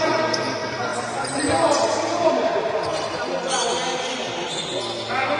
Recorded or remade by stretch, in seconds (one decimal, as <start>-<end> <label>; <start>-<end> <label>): 0.0-0.9 recorded; 0.9-2.3 remade; 2.3-2.9 recorded; 2.9-3.7 remade; 3.7-5.4 recorded